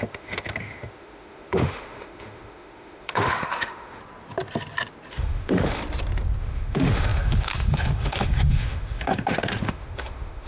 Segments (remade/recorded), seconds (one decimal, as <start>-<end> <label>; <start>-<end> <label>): 0.0-4.0 remade; 4.0-5.1 recorded; 5.1-5.8 remade; 5.8-6.4 recorded; 6.4-10.5 remade